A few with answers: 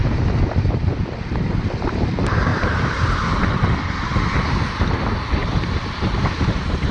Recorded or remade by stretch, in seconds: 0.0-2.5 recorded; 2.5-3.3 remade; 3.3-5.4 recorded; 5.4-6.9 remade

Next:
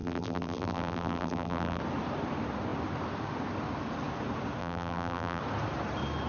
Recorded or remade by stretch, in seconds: 0.0-1.8 remade; 1.8-4.6 recorded; 4.6-5.4 remade; 5.4-6.3 recorded

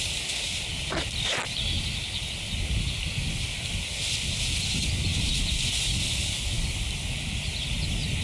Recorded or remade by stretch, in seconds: 0.0-5.1 recorded; 5.1-5.7 remade; 5.7-8.2 recorded

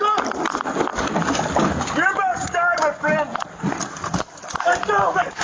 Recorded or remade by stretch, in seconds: 0.0-0.9 recorded; 0.9-1.5 remade; 1.5-3.3 recorded; 3.3-4.5 remade; 4.5-5.4 recorded

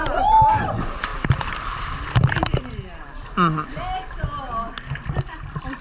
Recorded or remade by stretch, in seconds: 0.0-0.6 remade; 0.6-1.1 recorded; 1.1-2.6 remade; 2.6-5.8 recorded